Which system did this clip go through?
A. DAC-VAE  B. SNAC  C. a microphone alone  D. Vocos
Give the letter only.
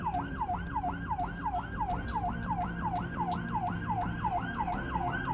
C